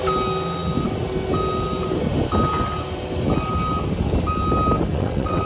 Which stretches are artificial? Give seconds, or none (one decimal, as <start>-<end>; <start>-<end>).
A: 4.9-5.5